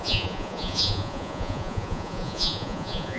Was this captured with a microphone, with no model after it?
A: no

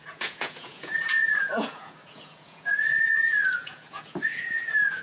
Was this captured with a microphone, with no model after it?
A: no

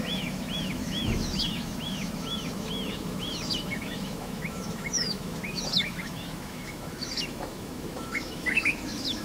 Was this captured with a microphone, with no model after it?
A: no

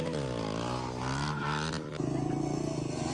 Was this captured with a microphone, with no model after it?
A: yes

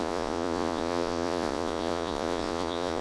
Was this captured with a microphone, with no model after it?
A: no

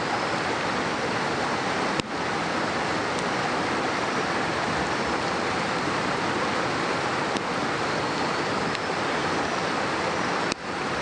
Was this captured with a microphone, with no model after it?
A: yes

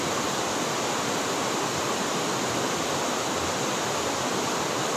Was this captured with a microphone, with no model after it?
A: yes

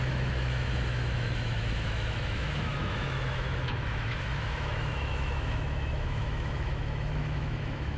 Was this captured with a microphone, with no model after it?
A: no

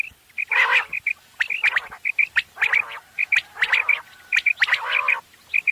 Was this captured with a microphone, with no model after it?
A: yes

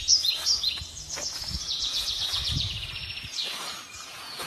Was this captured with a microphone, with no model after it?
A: no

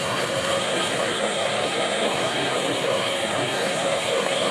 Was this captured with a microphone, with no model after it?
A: no